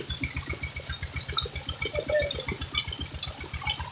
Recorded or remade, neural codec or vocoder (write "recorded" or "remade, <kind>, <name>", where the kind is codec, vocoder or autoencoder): recorded